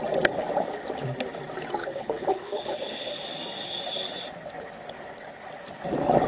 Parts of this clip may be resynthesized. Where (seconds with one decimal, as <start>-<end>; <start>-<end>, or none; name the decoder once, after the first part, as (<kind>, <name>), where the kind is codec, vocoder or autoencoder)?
1.8-3.1 (codec, HILCodec)

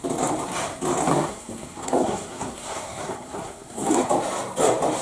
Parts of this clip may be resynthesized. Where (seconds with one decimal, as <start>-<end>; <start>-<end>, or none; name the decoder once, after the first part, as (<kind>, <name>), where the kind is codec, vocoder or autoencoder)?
1.1-4.1 (codec, SNAC)

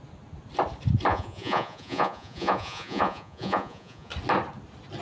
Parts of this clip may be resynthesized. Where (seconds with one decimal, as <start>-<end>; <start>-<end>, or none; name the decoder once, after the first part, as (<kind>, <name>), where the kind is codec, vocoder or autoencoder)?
1.1-4.1 (vocoder, Vocos)